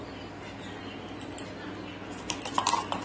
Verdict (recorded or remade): recorded